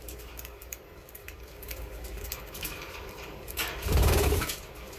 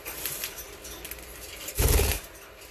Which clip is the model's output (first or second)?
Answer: first